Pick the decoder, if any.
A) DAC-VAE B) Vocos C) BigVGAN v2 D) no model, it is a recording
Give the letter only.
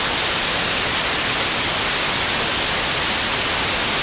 D